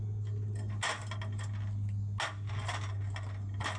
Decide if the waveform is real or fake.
real